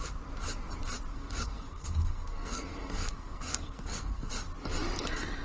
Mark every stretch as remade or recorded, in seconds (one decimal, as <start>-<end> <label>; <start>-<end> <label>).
0.0-1.1 recorded; 1.1-4.3 remade; 4.3-5.4 recorded